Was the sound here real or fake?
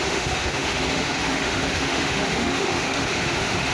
fake